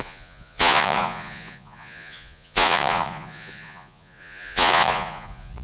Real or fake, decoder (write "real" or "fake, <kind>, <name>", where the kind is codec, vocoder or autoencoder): fake, vocoder, Vocos